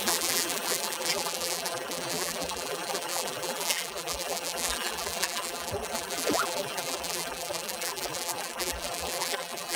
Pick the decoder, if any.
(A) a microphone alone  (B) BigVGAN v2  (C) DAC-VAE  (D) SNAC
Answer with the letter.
B